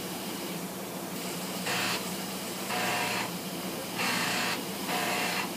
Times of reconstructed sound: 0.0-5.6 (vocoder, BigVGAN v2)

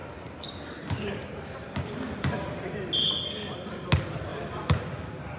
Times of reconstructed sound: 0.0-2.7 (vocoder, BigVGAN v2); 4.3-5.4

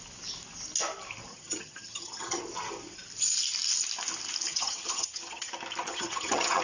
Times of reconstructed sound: 1.3-2.4 (vocoder, HiFi-GAN); 4.5-5.5; 5.9-6.6

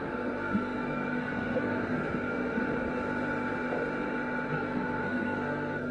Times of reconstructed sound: 0.0-2.6 (codec, SNAC); 4.5-5.9

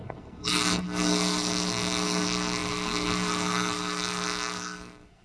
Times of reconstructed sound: 0.0-5.2 (codec, SNAC)